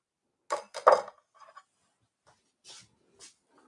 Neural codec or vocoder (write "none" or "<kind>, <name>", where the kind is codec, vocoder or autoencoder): none